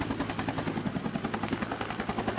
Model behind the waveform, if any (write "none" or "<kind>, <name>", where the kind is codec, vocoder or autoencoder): none